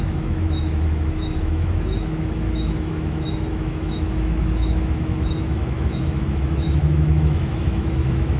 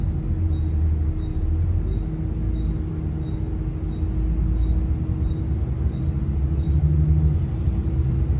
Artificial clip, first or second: first